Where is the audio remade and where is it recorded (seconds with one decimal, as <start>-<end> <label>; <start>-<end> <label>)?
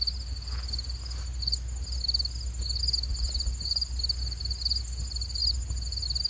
0.0-6.3 recorded